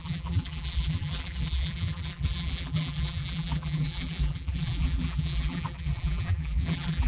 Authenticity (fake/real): fake